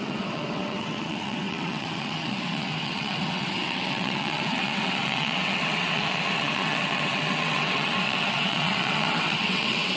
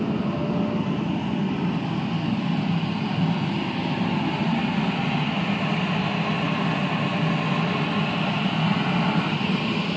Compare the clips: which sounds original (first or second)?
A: second